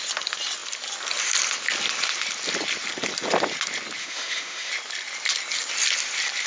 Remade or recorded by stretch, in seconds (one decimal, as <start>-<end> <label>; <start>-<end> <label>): 0.0-4.0 recorded; 4.0-4.7 remade; 4.7-6.5 recorded